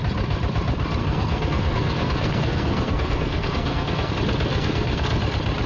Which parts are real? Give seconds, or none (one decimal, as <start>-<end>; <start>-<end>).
0.0-1.0; 4.1-4.5; 5.2-5.7